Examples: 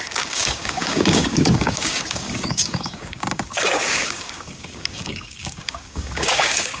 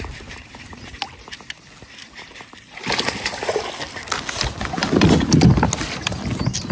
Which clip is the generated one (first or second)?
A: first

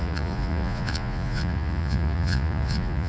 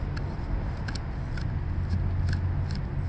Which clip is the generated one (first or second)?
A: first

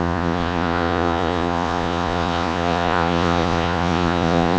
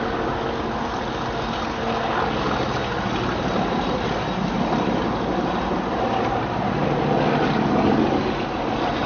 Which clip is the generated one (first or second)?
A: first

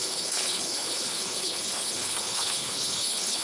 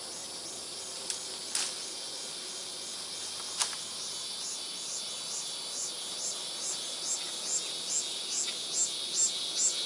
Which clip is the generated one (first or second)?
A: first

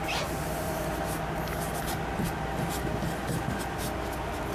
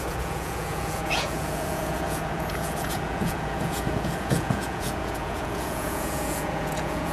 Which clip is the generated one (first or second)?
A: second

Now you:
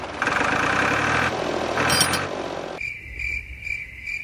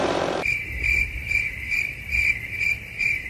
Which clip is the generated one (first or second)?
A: second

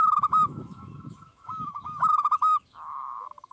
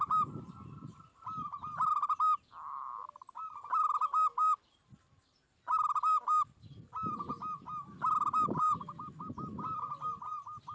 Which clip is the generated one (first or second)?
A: first